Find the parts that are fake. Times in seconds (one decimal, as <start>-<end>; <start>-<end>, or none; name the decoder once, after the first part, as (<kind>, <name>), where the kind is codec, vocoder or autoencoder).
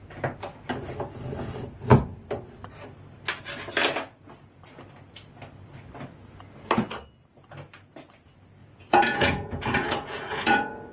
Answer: 8.6-10.9 (vocoder, Vocos)